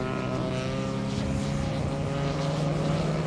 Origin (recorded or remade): recorded